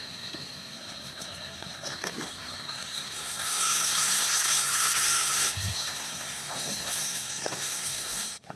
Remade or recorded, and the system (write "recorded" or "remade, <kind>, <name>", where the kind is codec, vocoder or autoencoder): remade, codec, SNAC